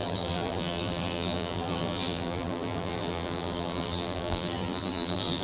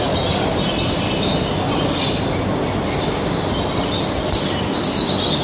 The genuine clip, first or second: second